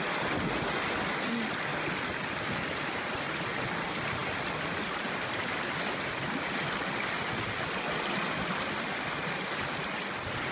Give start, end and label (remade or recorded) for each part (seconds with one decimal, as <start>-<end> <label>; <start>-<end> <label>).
0.0-10.5 recorded